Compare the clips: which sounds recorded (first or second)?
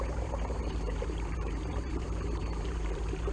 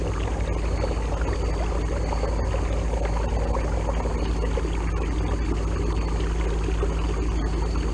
second